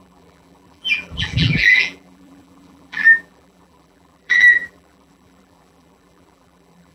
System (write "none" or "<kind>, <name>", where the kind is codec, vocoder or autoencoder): vocoder, BigVGAN v2